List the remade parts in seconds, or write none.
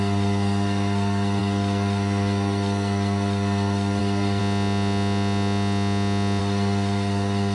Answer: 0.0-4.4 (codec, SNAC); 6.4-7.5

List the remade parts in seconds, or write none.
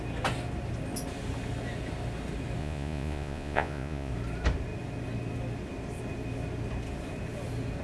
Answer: 2.6-4.1 (vocoder, Vocos)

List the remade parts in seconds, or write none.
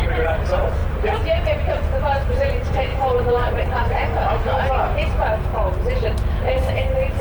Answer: 0.0-5.5 (vocoder, BigVGAN v2); 6.7-7.2